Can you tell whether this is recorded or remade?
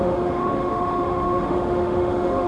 remade